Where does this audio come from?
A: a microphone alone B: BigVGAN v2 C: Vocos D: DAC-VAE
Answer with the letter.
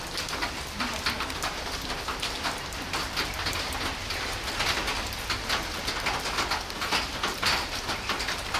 A